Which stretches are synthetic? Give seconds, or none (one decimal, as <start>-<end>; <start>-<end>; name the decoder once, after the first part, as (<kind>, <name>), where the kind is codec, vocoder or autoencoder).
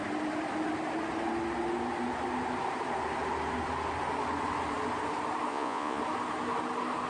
5.5-6.0 (vocoder, Vocos)